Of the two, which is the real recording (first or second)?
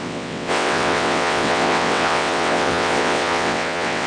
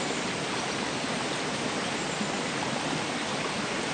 second